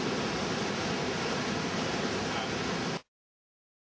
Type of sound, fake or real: real